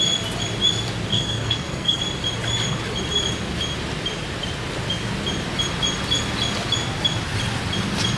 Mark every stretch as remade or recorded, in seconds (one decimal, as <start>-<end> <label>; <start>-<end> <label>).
0.0-1.1 recorded; 1.1-2.0 remade; 2.0-8.2 recorded